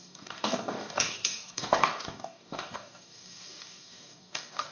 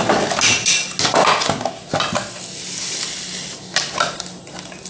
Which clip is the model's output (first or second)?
first